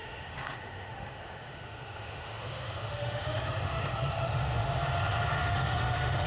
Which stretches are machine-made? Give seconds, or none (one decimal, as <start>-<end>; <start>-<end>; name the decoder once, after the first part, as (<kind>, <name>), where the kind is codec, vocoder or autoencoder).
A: 0.0-4.6 (autoencoder, DAC-VAE); 5.3-6.3